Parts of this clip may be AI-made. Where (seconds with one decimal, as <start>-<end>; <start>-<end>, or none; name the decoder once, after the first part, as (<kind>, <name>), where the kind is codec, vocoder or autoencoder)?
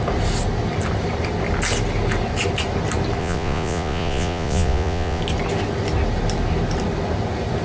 3.2-5.2 (vocoder, Vocos)